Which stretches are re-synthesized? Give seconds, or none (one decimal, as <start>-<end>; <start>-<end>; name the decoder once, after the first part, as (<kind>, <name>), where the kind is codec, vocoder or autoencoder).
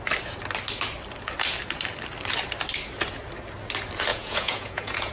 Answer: 4.1-5.1 (vocoder, Vocos)